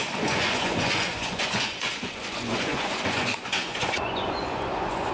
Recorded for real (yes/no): no